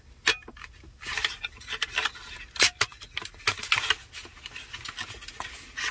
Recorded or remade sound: recorded